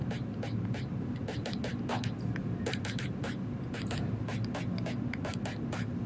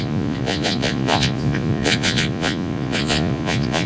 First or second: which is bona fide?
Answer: first